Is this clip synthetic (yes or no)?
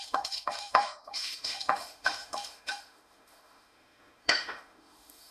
yes